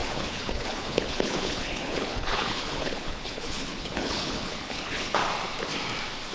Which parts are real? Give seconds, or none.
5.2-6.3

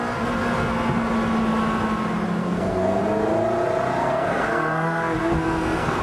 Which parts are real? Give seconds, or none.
0.0-2.4; 3.0-4.0